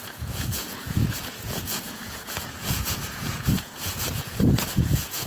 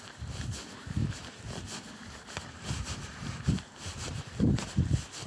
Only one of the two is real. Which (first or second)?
second